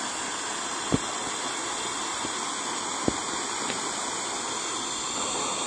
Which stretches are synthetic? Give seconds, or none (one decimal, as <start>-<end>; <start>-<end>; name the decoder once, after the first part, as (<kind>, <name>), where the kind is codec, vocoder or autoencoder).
none